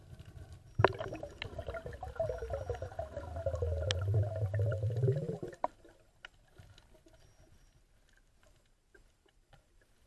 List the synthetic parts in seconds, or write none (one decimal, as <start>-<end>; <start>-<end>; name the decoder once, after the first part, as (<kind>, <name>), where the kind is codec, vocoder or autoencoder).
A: none